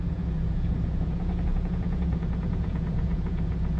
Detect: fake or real fake